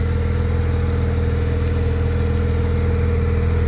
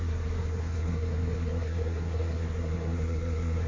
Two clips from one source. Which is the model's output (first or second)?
second